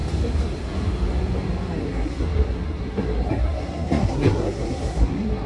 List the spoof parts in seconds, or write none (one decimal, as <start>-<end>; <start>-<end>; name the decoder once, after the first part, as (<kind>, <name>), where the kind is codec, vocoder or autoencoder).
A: 1.8-5.5 (codec, SNAC)